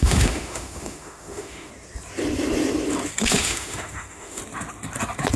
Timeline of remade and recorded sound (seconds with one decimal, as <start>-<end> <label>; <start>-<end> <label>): 0.0-1.7 remade; 1.7-3.2 recorded; 3.2-4.4 remade; 4.4-5.4 recorded